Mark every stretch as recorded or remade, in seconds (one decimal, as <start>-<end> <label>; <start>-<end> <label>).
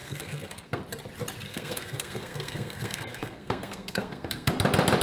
0.0-0.8 remade; 0.8-1.5 recorded; 1.5-4.5 remade; 4.5-5.0 recorded